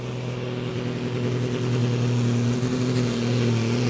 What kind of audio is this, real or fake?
real